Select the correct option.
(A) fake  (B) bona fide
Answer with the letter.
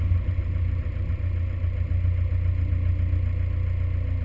B